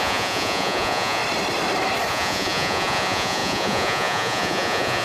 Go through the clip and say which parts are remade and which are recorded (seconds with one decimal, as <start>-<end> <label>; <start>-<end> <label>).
0.0-1.2 remade; 1.2-2.1 recorded; 2.1-5.0 remade